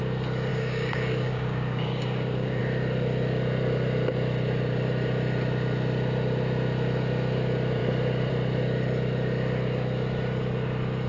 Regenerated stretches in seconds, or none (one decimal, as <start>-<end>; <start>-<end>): 0.5-2.6

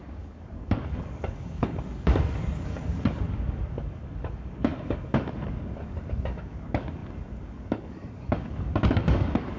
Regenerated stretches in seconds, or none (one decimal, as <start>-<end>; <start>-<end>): 0.0-9.6

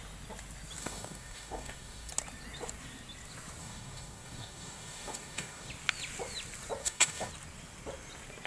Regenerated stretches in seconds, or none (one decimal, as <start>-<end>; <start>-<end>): 0.8-2.1; 3.6-5.7; 6.8-7.3

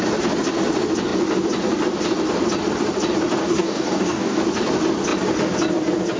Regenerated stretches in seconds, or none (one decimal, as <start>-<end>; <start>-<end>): 3.4-4.4